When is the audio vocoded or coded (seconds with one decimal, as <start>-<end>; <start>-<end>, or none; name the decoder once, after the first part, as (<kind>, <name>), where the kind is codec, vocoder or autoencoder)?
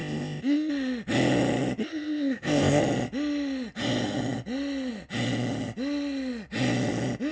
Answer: 0.0-0.7 (codec, ZipCodec); 1.8-2.8